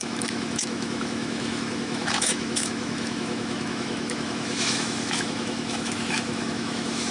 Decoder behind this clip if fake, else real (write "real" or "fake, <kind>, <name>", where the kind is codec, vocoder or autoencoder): fake, autoencoder, DAC-VAE